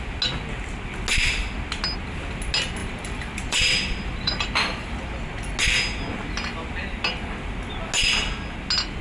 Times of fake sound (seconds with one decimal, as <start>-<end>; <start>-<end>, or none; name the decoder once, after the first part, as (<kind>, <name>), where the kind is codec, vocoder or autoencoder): 2.8-5.1 (vocoder, BigVGAN v2)